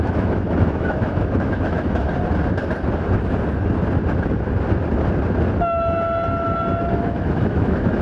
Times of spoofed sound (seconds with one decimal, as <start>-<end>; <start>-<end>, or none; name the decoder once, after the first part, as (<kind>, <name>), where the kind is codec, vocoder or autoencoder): 0.0-2.0 (autoencoder, DAC-VAE); 6.8-8.0